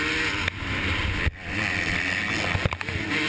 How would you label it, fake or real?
real